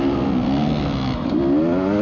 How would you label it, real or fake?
real